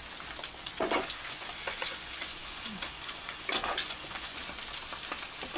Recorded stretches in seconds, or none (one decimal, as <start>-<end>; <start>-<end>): 0.0-0.6; 4.4-5.6